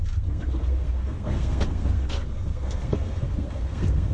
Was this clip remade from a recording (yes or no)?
yes